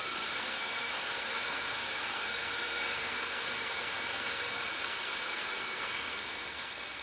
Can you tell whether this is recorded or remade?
remade